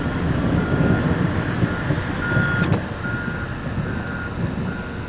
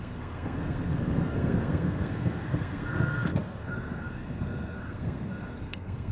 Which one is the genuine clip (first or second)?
first